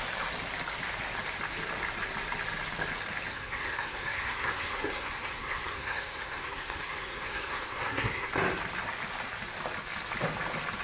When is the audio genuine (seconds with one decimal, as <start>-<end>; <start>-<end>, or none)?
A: 0.0-3.3; 8.3-10.8